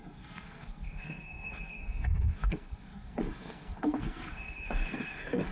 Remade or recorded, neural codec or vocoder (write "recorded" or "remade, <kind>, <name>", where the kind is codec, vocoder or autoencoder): remade, codec, SNAC